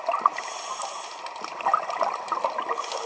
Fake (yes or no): no